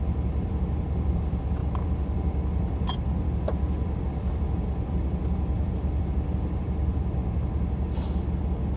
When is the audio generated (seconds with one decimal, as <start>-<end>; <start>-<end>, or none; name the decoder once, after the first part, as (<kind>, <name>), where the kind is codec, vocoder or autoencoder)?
0.0-7.2 (vocoder, BigVGAN v2)